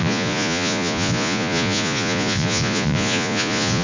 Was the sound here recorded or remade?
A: remade